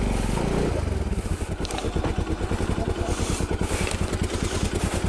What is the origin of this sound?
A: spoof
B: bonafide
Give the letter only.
B